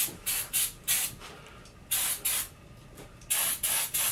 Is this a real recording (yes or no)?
yes